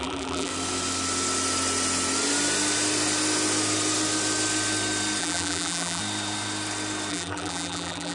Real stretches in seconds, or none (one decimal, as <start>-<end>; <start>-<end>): 0.5-5.2; 6.0-7.1